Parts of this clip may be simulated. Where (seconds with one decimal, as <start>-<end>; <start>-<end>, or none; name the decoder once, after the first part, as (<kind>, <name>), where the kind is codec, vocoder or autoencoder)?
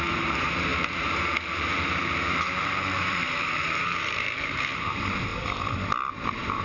0.0-5.3 (vocoder, BigVGAN v2); 6.1-6.6